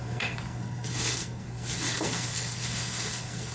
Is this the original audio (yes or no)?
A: no